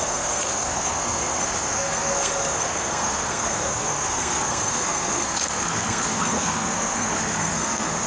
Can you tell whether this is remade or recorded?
remade